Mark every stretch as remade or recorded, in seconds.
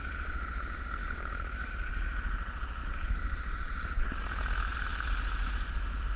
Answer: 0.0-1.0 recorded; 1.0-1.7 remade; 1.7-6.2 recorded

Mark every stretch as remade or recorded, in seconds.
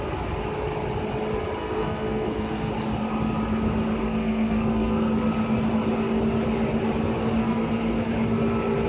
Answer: 0.0-1.6 recorded; 1.6-2.7 remade; 2.7-4.0 recorded; 4.0-5.1 remade; 5.1-7.4 recorded; 7.4-8.1 remade; 8.1-8.9 recorded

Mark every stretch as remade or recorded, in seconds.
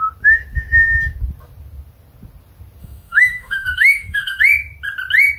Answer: 0.0-2.8 recorded; 2.8-4.4 remade; 4.4-5.4 recorded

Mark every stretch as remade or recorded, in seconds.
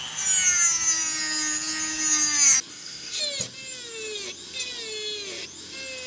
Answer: 0.0-2.7 recorded; 2.7-3.2 remade; 3.2-6.1 recorded